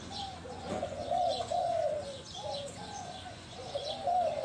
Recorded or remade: remade